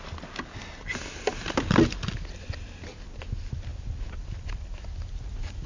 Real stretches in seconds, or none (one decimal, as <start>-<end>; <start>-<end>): 0.0-5.7